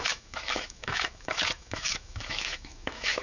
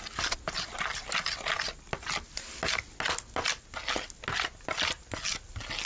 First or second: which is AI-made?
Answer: first